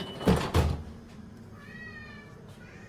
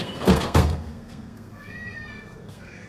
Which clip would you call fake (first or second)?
second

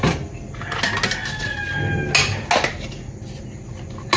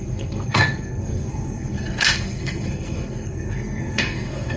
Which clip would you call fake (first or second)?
second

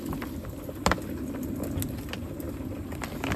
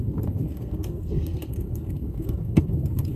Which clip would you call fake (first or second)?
second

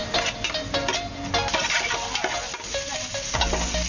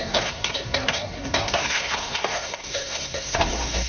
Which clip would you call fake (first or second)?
second